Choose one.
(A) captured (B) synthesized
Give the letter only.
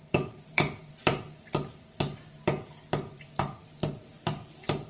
B